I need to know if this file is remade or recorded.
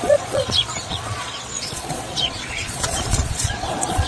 remade